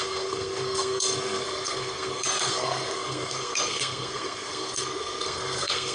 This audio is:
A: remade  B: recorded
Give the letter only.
A